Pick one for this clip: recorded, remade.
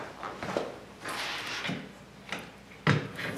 recorded